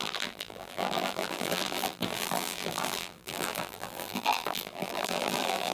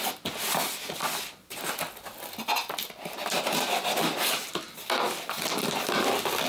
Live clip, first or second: second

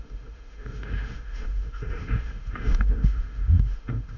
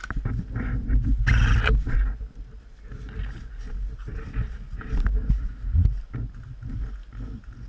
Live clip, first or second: second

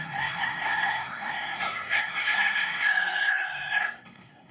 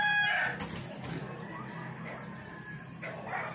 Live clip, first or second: second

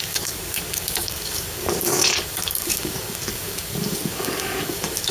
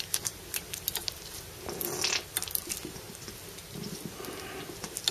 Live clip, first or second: second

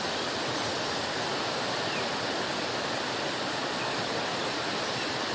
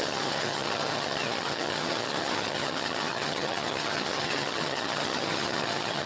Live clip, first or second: first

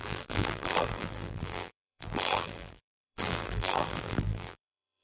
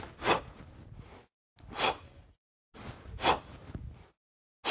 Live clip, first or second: second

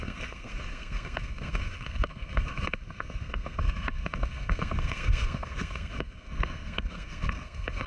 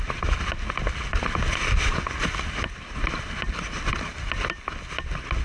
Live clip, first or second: second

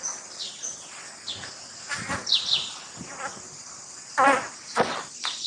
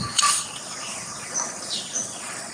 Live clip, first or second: first